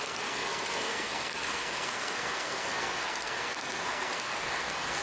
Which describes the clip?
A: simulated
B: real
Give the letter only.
A